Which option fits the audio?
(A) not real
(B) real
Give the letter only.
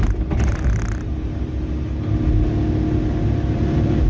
B